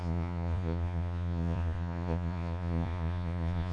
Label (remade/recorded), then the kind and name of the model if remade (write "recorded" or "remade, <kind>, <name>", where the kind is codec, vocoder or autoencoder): remade, vocoder, Vocos